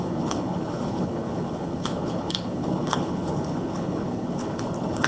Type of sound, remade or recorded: remade